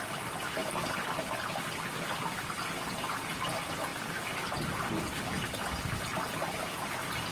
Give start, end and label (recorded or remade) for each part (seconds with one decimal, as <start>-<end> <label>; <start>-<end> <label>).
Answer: 0.0-0.6 recorded; 0.6-1.3 remade; 1.3-7.3 recorded

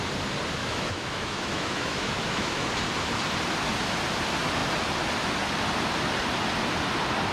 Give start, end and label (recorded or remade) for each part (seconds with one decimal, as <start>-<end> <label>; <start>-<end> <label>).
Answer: 0.0-0.6 recorded; 0.6-2.7 remade; 2.7-7.3 recorded

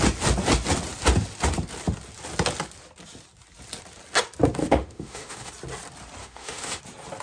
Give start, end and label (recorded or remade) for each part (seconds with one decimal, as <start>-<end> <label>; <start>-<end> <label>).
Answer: 0.0-4.6 recorded; 4.6-5.5 remade; 5.5-6.2 recorded; 6.2-6.8 remade; 6.8-7.2 recorded

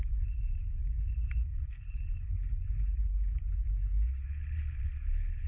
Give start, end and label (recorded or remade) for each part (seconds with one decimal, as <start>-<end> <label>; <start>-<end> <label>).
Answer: 0.0-5.5 remade

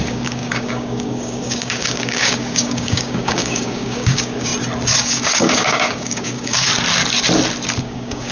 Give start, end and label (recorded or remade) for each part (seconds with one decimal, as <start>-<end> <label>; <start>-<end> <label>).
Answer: 0.0-4.5 remade; 4.5-5.0 recorded; 5.0-6.7 remade; 6.7-7.8 recorded; 7.8-8.3 remade

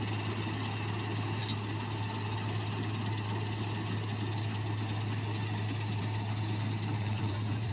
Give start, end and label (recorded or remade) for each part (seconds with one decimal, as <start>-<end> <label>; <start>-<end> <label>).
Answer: 0.0-7.0 recorded; 7.0-7.7 remade